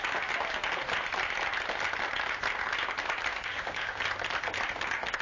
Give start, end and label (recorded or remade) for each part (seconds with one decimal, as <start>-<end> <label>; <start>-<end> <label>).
0.0-3.3 recorded; 3.3-4.0 remade; 4.0-5.2 recorded